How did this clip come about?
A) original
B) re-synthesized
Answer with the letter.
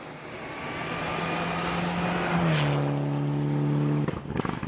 A